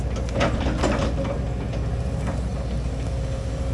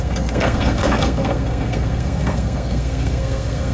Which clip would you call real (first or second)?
first